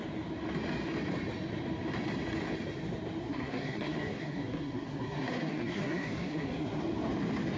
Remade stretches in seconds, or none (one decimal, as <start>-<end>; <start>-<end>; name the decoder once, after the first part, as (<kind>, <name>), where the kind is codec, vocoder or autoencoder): 3.2-6.8 (codec, SNAC)